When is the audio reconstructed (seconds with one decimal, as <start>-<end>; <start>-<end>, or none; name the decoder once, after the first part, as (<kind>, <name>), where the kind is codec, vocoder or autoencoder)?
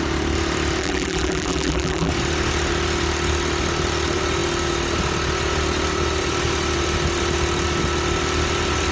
0.8-2.1 (vocoder, BigVGAN v2)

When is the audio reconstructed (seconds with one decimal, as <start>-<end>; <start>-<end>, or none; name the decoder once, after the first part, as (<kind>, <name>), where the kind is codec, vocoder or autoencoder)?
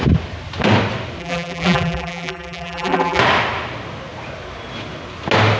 1.2-3.2 (vocoder, BigVGAN v2)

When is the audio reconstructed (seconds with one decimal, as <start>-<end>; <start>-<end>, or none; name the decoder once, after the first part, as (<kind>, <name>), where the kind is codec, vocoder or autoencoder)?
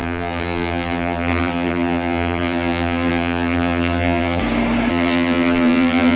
0.0-4.4 (vocoder, BigVGAN v2); 4.9-6.2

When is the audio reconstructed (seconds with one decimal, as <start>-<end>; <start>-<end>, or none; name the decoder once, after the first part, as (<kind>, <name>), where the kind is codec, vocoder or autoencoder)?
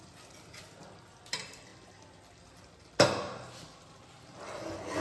none